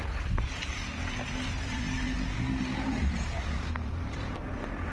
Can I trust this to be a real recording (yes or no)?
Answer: yes